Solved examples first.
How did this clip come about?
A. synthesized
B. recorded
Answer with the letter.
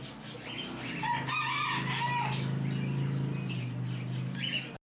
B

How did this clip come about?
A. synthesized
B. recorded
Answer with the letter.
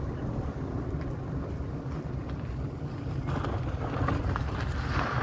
B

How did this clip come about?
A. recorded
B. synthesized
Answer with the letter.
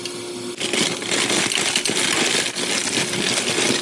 A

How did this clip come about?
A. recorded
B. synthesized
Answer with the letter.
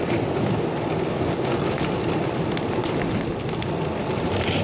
A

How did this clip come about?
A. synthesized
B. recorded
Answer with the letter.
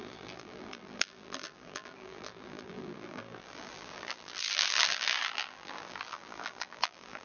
A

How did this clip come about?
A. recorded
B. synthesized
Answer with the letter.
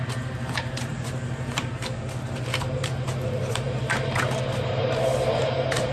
B